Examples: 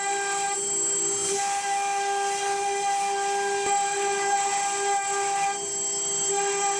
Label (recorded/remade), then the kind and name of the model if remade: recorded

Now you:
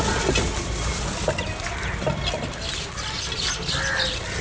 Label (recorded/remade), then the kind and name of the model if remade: recorded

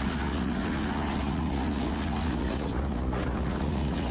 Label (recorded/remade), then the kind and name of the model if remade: remade, vocoder, Vocos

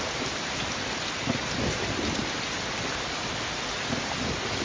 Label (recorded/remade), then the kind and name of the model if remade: recorded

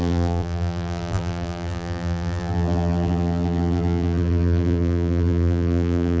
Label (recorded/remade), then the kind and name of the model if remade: remade, vocoder, BigVGAN v2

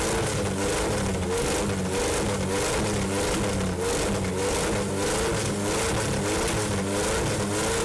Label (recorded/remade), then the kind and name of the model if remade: recorded